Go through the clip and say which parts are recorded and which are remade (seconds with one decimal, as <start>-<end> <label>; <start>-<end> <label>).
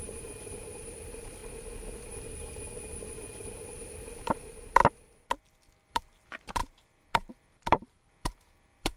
0.0-1.4 remade; 1.4-2.8 recorded; 2.8-4.8 remade; 4.8-5.9 recorded; 5.9-9.0 remade